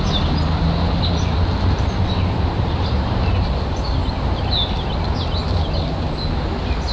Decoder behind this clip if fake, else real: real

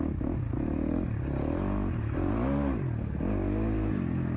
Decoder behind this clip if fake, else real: real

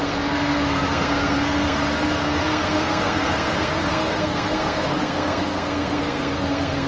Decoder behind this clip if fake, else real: fake, codec, SNAC